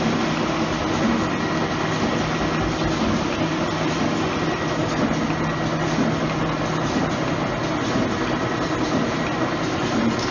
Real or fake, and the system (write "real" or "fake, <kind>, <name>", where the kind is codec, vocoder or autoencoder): real